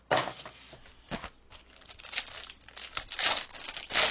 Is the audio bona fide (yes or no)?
yes